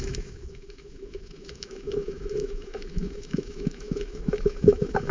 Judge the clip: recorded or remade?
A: remade